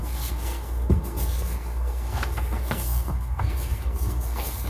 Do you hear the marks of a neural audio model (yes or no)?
yes